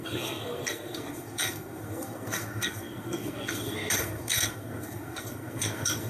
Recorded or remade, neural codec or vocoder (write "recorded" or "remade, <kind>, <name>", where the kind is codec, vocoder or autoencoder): remade, codec, SNAC